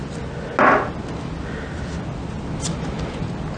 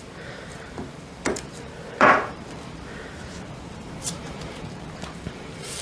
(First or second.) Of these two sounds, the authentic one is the first